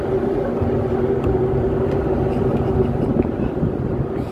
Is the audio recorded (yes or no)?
yes